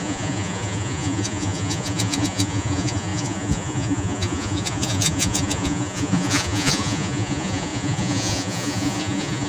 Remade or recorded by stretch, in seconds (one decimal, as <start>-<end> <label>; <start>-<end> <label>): 0.0-9.5 remade